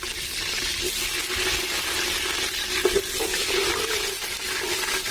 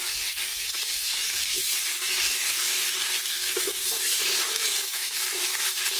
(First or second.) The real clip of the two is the first